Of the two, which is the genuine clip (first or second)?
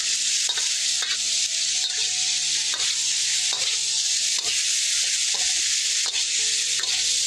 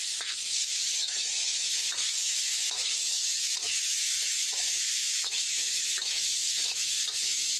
first